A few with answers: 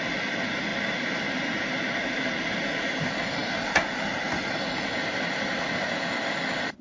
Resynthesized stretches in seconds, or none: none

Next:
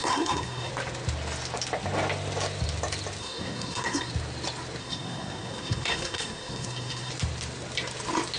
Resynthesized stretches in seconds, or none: 0.0-0.7 (codec, SNAC); 3.2-4.1; 4.8-7.1

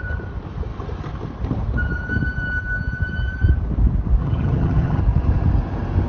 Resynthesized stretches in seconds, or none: 4.2-5.0 (vocoder, HiFi-GAN)

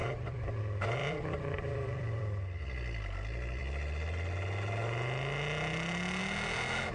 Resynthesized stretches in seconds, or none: 0.0-0.6 (vocoder, BigVGAN v2); 1.0-2.6

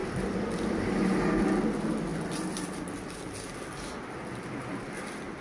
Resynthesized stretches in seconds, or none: 0.0-0.8 (vocoder, BigVGAN v2); 2.1-4.9

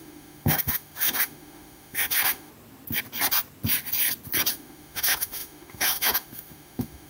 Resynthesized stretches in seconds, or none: 0.0-2.5 (autoencoder, DAC-VAE); 4.5-7.1